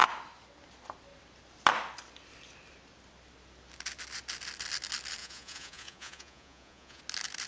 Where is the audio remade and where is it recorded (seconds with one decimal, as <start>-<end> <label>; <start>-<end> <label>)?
0.0-5.2 recorded; 5.2-7.0 remade; 7.0-7.5 recorded